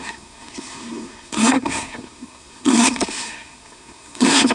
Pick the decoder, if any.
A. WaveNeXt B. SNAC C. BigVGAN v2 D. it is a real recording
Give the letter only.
B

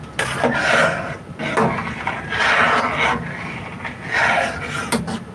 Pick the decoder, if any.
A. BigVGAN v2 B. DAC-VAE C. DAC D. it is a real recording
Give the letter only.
D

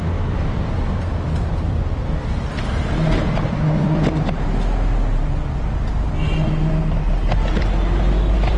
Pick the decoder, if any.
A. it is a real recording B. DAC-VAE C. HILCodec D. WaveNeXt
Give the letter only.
A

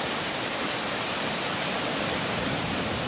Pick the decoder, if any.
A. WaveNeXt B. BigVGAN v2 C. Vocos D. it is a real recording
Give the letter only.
B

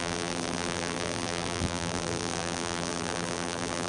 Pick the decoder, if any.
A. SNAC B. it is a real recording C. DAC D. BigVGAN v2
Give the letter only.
D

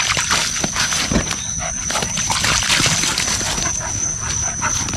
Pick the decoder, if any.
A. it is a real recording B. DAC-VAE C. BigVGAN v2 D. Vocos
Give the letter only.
A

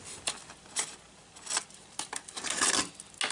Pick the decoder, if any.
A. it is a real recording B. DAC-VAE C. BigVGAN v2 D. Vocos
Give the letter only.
A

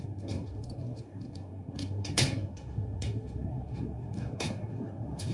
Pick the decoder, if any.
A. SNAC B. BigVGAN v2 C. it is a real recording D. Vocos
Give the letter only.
A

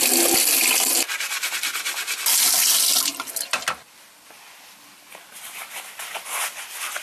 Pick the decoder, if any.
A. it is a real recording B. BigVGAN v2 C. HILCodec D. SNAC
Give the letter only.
A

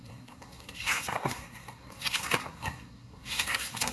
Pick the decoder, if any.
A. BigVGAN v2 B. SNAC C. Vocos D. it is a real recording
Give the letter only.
B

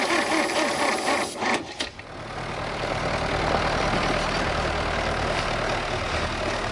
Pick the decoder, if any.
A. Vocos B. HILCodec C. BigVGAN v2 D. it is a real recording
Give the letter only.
D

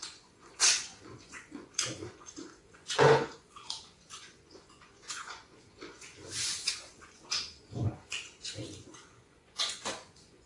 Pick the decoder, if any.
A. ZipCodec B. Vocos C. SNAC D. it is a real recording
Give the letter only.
B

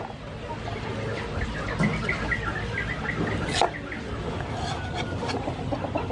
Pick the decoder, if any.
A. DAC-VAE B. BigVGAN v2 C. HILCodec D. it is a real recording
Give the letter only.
D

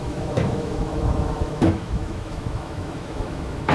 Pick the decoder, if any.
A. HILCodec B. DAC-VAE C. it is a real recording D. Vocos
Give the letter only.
B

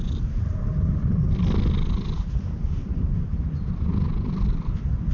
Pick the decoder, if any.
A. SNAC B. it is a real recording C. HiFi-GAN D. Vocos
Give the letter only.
B